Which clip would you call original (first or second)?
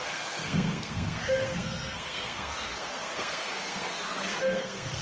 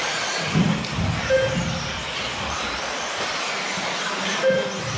second